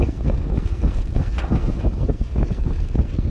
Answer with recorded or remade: remade